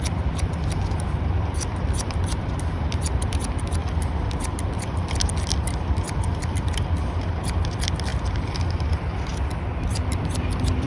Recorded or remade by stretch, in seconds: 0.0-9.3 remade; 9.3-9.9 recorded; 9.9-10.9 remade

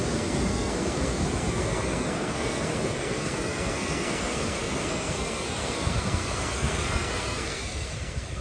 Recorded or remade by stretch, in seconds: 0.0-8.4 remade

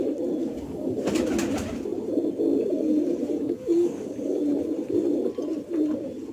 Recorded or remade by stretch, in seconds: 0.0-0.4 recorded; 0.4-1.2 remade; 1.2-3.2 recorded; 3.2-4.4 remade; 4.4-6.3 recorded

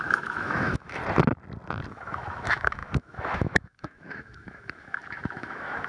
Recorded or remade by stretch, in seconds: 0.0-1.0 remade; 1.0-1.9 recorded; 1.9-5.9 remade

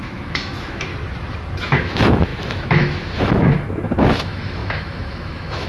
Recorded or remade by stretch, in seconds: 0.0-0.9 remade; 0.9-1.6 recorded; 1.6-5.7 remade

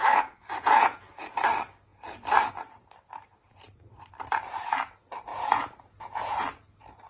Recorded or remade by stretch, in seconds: 0.0-1.2 remade; 1.2-5.3 recorded; 5.3-6.4 remade; 6.4-7.1 recorded